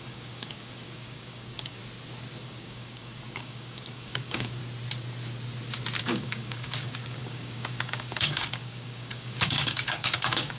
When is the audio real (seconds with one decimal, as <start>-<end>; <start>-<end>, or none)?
1.8-2.4; 4.6-6.0